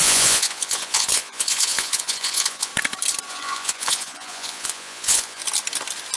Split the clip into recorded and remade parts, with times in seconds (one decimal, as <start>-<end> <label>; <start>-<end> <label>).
0.0-2.7 remade; 2.7-3.3 recorded; 3.3-5.4 remade; 5.4-6.2 recorded